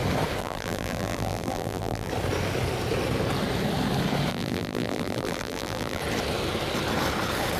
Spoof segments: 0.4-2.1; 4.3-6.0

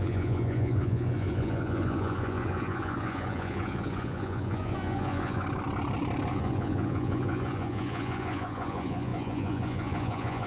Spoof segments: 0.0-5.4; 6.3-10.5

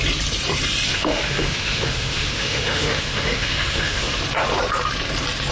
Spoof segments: 0.9-4.2

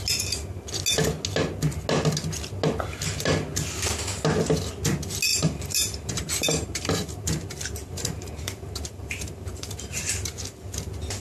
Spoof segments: 5.3-10.0

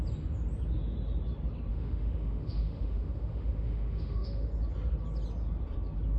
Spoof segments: 1.7-4.5

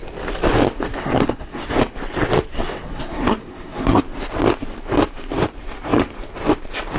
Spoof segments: 1.0-1.8; 2.5-4.0

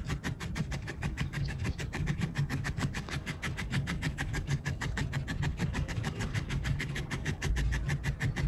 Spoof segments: 0.6-5.0; 5.5-7.5